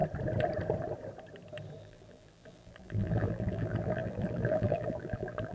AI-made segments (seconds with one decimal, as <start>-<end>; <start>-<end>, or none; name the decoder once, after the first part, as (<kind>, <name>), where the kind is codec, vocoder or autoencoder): 1.8-5.5 (vocoder, BigVGAN v2)